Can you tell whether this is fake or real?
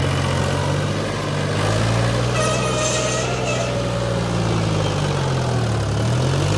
real